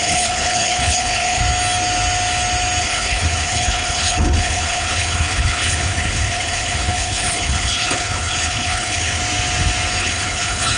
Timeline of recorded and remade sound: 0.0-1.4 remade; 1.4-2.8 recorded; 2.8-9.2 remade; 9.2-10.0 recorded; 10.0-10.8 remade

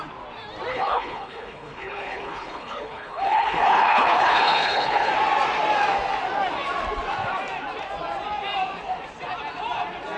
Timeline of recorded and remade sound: 0.0-0.7 recorded; 0.7-5.1 remade; 5.1-10.2 recorded

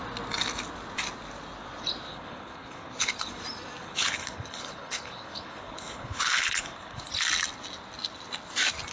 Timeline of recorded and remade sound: 0.0-2.1 recorded; 2.1-3.1 remade; 3.1-3.8 recorded; 3.8-7.1 remade; 7.1-8.9 recorded

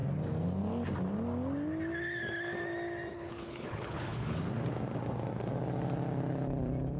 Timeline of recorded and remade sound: 0.0-3.1 recorded; 3.1-4.4 remade; 4.4-7.0 recorded

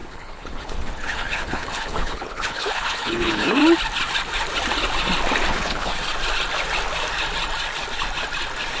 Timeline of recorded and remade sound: 0.0-3.6 remade; 3.6-5.5 recorded; 5.5-5.9 remade; 5.9-8.8 recorded

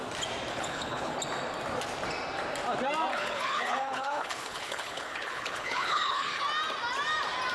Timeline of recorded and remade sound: 0.0-0.5 recorded; 0.5-1.2 remade; 1.2-3.1 recorded; 3.1-6.4 remade; 6.4-7.5 recorded

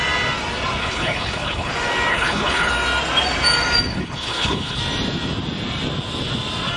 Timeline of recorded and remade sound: 0.0-0.8 recorded; 0.8-1.7 remade; 1.7-2.1 recorded; 2.1-2.7 remade; 2.7-3.9 recorded; 3.9-4.8 remade; 4.8-6.8 recorded

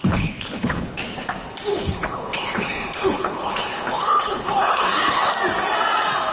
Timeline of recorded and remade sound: 0.0-1.0 remade; 1.0-1.7 recorded; 1.7-5.3 remade; 5.3-6.3 recorded